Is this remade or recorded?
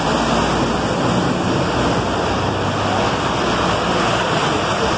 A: recorded